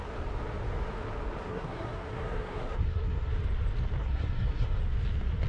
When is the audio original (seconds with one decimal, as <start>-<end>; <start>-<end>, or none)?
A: 0.0-1.5; 3.3-4.0; 4.8-5.5